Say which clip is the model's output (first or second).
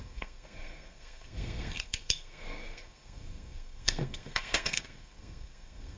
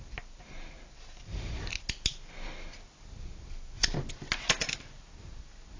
first